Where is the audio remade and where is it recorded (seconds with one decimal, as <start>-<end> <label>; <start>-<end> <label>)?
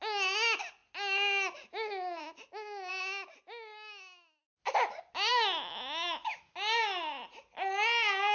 0.0-5.3 recorded; 5.3-6.5 remade; 6.5-8.3 recorded